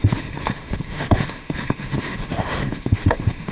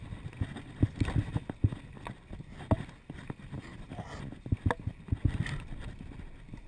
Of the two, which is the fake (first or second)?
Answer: first